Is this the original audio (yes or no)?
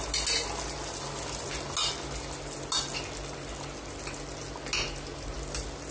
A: yes